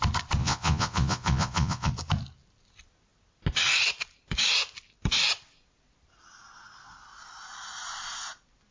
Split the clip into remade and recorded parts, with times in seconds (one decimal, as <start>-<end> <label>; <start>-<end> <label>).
0.0-0.4 recorded; 0.4-1.9 remade; 1.9-8.7 recorded